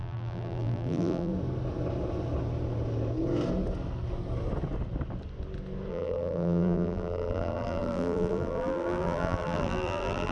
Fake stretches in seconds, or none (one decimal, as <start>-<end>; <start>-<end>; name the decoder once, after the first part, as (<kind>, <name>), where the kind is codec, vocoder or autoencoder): 0.0-1.3 (vocoder, BigVGAN v2); 5.9-10.3